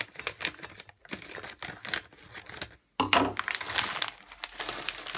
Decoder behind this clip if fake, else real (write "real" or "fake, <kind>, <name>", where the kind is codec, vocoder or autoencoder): real